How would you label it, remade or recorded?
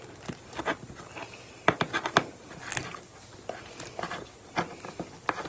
recorded